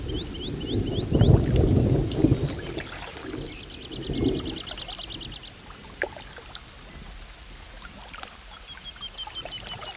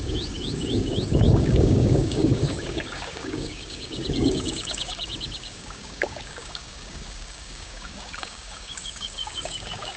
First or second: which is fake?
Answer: second